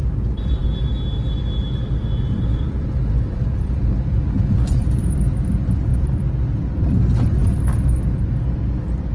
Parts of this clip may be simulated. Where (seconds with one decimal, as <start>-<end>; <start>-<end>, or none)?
none